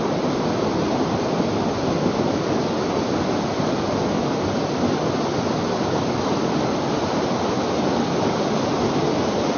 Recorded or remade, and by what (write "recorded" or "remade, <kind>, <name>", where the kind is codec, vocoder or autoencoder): recorded